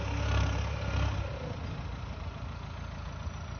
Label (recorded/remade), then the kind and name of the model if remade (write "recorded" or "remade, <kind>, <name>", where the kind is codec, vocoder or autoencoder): recorded